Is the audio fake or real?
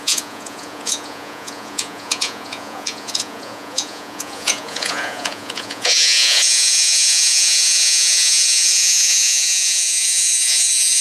fake